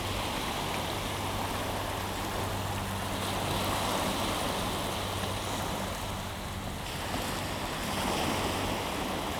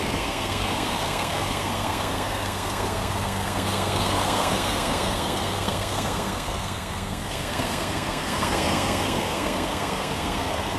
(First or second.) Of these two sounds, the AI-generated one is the second